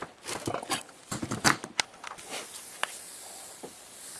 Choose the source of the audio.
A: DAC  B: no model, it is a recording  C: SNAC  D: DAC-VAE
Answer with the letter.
B